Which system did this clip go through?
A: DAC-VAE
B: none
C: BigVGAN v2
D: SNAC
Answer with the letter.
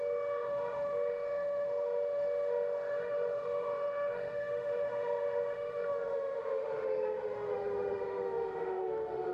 A